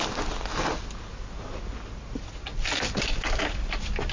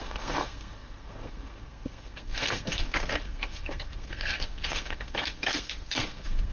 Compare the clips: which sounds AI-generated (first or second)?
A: second